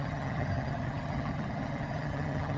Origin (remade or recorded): remade